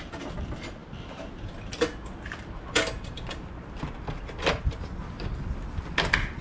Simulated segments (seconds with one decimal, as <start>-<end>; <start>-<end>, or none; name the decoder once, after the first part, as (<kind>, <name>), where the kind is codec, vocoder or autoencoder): none